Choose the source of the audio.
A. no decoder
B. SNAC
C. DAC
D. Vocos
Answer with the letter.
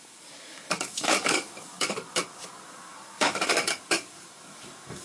C